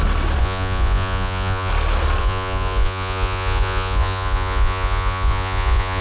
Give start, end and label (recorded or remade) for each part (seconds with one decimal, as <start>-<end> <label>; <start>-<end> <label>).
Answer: 0.0-0.4 recorded; 0.4-1.7 remade; 1.7-2.2 recorded; 2.2-6.0 remade